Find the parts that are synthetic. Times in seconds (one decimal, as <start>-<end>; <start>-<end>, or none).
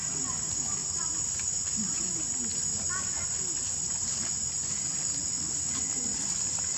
none